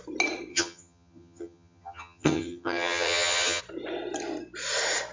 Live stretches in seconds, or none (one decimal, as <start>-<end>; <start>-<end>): 0.0-0.5; 3.6-5.1